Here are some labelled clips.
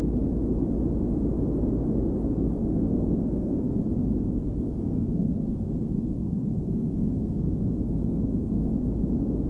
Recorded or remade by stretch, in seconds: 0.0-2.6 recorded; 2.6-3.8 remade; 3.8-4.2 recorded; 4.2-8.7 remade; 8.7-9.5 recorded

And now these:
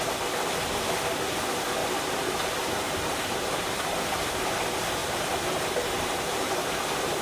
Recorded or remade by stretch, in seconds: 0.0-1.8 recorded; 1.8-4.1 remade; 4.1-5.0 recorded; 5.0-6.7 remade; 6.7-7.2 recorded